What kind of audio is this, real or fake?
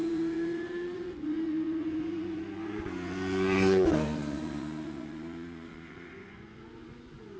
fake